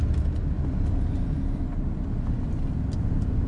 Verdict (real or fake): real